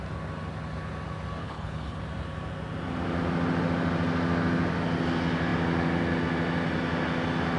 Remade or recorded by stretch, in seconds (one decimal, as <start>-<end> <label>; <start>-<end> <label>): 0.0-1.4 recorded; 1.4-2.0 remade; 2.0-7.6 recorded